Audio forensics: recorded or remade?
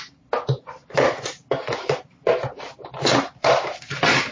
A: remade